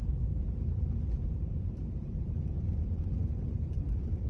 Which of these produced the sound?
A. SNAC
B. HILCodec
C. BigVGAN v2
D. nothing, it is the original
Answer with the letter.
C